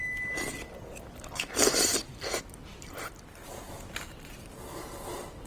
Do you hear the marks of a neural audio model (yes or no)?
no